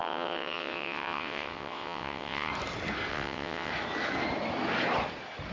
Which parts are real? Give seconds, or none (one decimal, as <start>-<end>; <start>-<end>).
2.5-3.1; 3.7-5.5